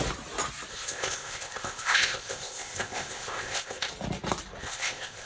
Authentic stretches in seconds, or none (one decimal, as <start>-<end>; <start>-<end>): 0.0-0.7; 3.9-4.6